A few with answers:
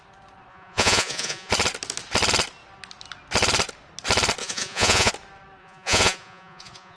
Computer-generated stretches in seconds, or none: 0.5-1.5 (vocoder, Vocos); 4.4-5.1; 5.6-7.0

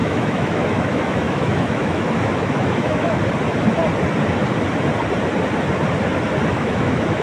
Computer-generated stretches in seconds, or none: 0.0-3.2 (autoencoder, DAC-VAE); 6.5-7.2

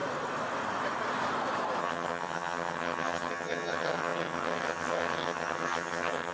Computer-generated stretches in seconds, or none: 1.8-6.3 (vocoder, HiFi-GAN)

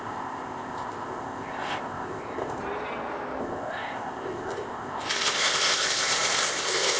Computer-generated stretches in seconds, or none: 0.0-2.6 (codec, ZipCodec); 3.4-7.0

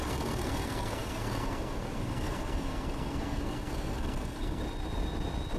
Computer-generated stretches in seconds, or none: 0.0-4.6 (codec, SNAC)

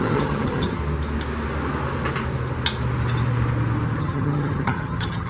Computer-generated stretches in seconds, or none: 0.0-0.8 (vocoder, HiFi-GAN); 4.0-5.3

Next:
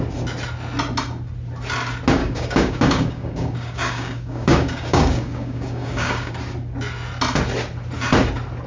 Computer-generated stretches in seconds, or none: 2.2-6.3 (codec, DAC)

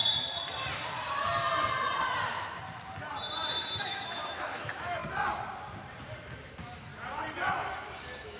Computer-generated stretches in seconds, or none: 3.8-5.0 (autoencoder, DAC-VAE); 6.2-6.9; 7.5-8.4